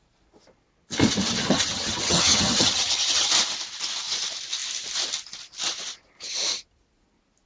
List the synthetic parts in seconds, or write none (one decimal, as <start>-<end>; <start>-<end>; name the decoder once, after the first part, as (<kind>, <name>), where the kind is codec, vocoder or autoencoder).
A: 1.4-3.3 (vocoder, HiFi-GAN)